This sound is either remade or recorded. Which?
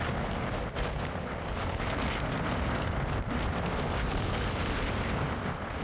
recorded